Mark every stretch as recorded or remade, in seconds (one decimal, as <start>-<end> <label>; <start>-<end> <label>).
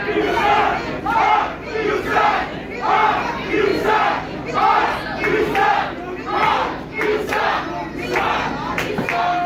0.0-0.4 recorded; 0.4-1.0 remade; 1.0-9.5 recorded